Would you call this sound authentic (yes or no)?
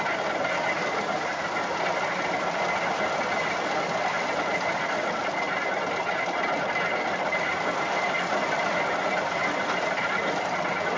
yes